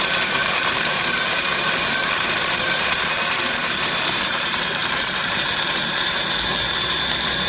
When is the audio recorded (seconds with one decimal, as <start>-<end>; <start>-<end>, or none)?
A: none